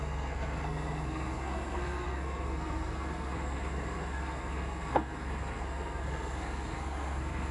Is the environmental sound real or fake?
fake